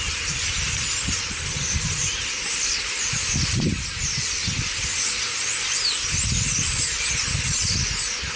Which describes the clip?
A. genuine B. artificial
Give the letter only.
A